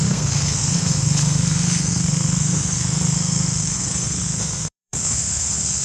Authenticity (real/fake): fake